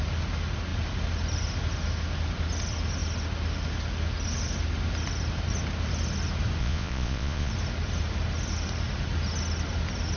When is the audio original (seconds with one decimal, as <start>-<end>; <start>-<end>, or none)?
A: 0.0-6.6; 7.5-10.2